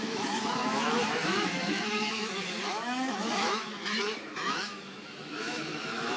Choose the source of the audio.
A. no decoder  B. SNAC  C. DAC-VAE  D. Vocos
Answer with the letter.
C